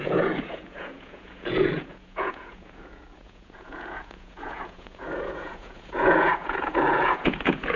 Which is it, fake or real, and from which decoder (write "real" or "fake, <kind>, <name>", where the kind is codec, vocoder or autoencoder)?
fake, vocoder, Vocos